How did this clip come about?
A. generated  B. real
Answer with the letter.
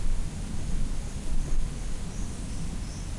B